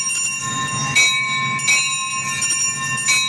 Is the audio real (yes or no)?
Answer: yes